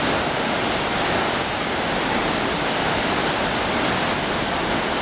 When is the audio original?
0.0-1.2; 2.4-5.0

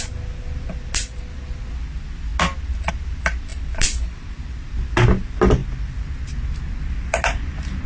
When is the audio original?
0.0-7.9

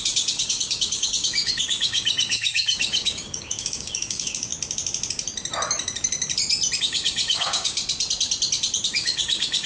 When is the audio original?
4.5-6.8; 7.8-8.9

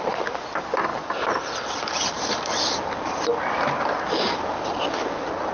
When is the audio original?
0.0-5.5

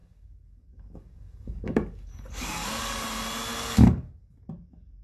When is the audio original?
3.0-3.5; 4.2-5.0

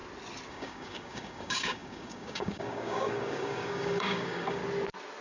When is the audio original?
0.0-0.5; 4.6-5.2

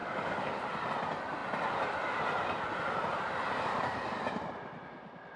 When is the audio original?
0.6-3.7; 4.2-5.4